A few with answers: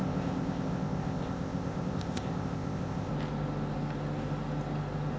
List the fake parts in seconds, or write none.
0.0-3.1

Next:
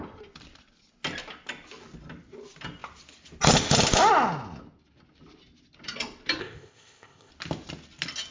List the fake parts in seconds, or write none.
6.4-7.3

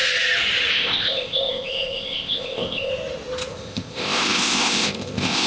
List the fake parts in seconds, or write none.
0.7-2.9; 3.5-5.5

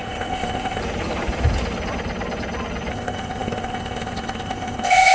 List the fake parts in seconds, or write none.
0.0-0.8; 2.9-5.1

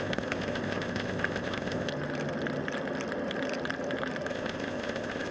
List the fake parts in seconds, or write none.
0.0-1.9; 4.3-5.3

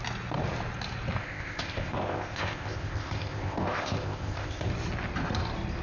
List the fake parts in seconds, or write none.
1.2-4.7

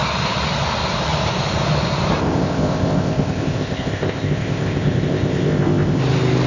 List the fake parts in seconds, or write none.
2.2-6.0